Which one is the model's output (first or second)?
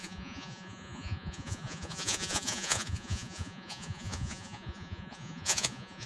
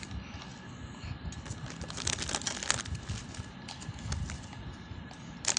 first